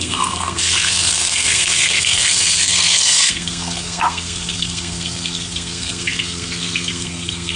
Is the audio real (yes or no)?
no